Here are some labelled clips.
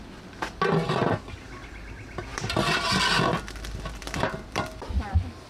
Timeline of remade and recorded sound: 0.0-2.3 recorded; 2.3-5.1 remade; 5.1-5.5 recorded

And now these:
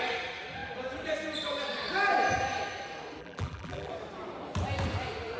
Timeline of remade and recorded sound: 0.0-3.2 recorded; 3.2-3.9 remade; 3.9-5.4 recorded

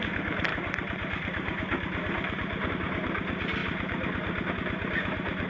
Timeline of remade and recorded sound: 0.0-0.5 recorded; 0.5-2.7 remade; 2.7-3.6 recorded; 3.6-4.5 remade; 4.5-5.5 recorded

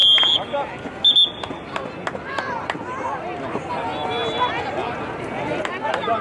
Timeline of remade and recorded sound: 0.0-6.2 recorded

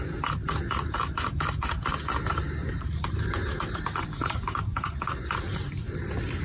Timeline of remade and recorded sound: 0.0-2.3 recorded; 2.3-6.4 remade

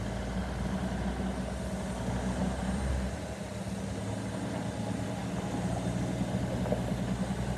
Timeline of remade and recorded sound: 0.0-0.4 recorded; 0.4-1.1 remade; 1.1-2.4 recorded; 2.4-3.5 remade; 3.5-7.6 recorded

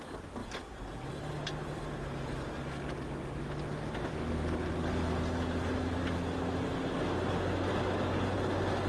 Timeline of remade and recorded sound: 0.0-0.4 recorded; 0.4-1.1 remade; 1.1-8.9 recorded